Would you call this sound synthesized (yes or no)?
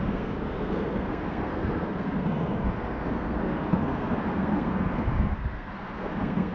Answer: yes